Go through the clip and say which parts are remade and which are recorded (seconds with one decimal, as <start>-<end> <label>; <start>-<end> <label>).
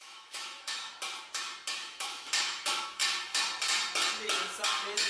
0.0-0.9 remade; 0.9-1.9 recorded; 1.9-3.0 remade; 3.0-5.1 recorded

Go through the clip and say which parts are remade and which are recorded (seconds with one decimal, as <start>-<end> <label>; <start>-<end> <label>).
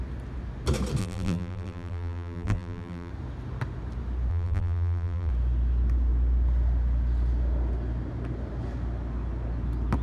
0.0-1.0 recorded; 1.0-3.1 remade; 3.1-4.3 recorded; 4.3-5.3 remade; 5.3-10.0 recorded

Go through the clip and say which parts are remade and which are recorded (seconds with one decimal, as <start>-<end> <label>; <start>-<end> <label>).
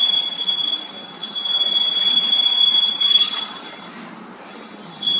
0.0-3.9 remade; 3.9-4.5 recorded; 4.5-5.2 remade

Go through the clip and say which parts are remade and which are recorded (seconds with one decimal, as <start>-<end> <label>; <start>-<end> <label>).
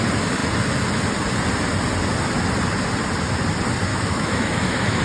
0.0-3.9 recorded; 3.9-5.0 remade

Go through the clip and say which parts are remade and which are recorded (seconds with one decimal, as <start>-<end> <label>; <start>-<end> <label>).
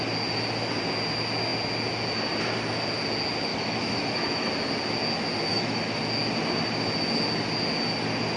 0.0-3.5 recorded; 3.5-4.5 remade; 4.5-5.5 recorded; 5.5-6.0 remade; 6.0-8.4 recorded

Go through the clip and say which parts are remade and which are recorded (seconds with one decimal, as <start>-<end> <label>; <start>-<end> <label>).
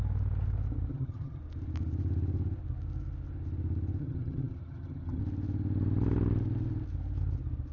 0.0-0.9 recorded; 0.9-1.4 remade; 1.4-4.0 recorded; 4.0-5.2 remade; 5.2-7.7 recorded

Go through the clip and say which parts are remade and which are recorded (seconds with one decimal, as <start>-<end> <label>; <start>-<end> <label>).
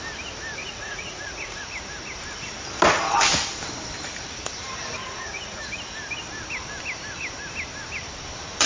0.0-0.6 recorded; 0.6-1.6 remade; 1.6-5.0 recorded; 5.0-5.6 remade; 5.6-8.7 recorded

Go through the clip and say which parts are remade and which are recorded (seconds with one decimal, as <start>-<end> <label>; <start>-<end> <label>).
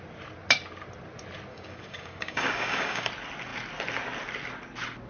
0.0-1.5 recorded; 1.5-3.1 remade; 3.1-5.1 recorded